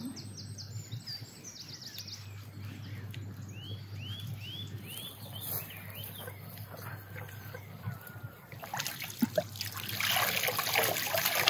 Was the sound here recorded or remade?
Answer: recorded